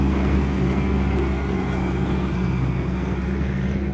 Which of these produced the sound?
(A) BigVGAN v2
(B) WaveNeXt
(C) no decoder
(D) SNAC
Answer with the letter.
D